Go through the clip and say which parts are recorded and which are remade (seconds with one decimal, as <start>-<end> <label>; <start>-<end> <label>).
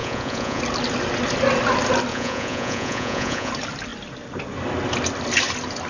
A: 0.0-0.6 remade; 0.6-2.1 recorded; 2.1-3.5 remade; 3.5-5.9 recorded